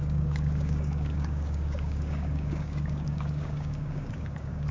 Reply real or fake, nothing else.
fake